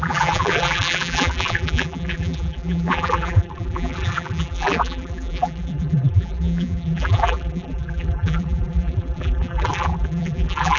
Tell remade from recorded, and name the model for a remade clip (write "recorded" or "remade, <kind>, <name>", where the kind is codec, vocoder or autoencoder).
remade, vocoder, BigVGAN v2